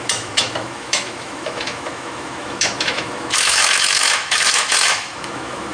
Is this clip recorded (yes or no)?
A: no